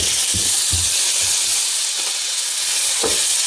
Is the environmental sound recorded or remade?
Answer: remade